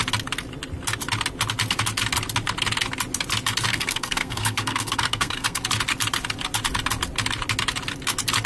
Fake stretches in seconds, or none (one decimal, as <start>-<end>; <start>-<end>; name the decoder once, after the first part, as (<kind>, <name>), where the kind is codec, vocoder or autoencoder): 3.7-5.6 (codec, SNAC)